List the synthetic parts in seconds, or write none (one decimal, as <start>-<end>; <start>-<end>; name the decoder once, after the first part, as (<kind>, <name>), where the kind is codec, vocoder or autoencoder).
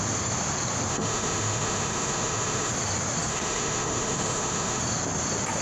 0.9-2.7 (autoencoder, DAC-VAE); 3.3-4.8